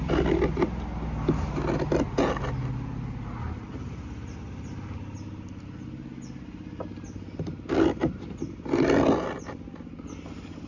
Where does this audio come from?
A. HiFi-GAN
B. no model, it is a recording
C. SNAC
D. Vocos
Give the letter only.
B